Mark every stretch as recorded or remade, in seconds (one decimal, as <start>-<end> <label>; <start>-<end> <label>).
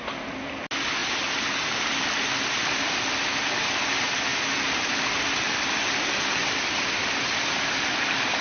0.0-8.4 recorded